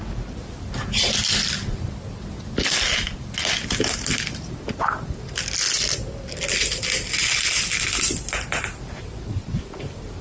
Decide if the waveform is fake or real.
real